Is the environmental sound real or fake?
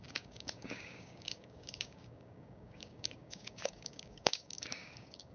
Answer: fake